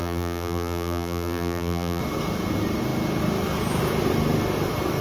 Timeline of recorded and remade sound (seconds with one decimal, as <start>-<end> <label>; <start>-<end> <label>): 0.0-2.0 remade; 2.0-5.0 recorded